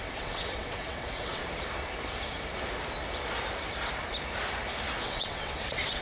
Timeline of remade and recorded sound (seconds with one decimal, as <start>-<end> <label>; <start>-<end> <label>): 0.0-1.4 remade; 1.4-5.0 recorded; 5.0-6.0 remade